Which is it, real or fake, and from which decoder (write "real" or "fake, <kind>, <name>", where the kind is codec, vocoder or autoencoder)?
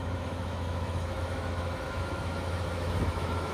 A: fake, autoencoder, DAC-VAE